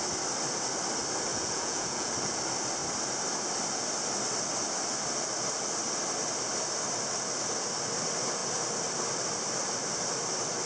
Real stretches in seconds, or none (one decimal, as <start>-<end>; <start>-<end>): 0.0-1.3; 2.1-10.7

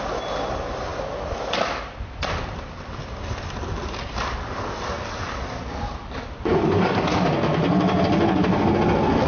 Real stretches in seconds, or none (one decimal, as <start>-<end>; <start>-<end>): 0.0-6.5; 7.3-9.3

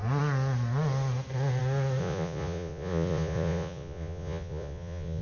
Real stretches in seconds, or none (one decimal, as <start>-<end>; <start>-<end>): 0.0-2.0

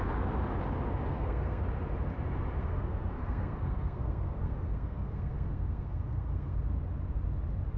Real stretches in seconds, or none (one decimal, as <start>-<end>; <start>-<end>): 0.0-1.1; 1.6-2.6; 6.6-7.8

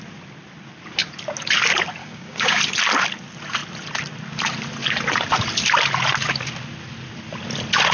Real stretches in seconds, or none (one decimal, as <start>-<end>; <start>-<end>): 0.0-2.0; 2.6-7.9